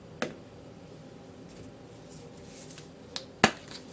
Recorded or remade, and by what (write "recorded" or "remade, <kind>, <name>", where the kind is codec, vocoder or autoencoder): recorded